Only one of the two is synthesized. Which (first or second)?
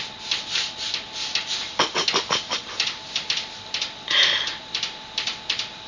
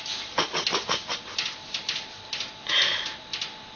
first